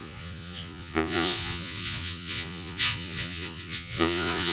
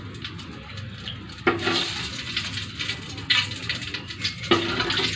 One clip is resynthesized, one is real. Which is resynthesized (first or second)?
first